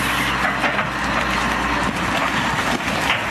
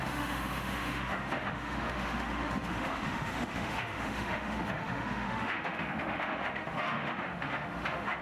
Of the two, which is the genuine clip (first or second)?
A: first